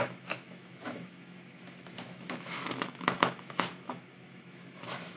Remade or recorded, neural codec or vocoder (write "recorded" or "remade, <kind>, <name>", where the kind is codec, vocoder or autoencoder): remade, autoencoder, DAC-VAE